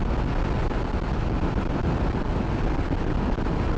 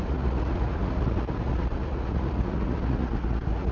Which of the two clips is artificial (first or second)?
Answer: second